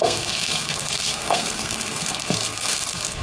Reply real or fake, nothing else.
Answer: fake